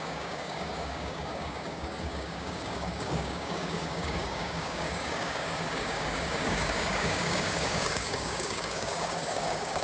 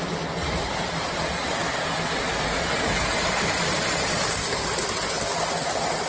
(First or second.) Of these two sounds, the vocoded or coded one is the first